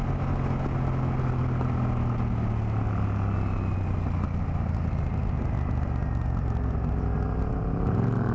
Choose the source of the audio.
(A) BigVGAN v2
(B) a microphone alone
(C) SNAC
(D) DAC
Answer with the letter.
B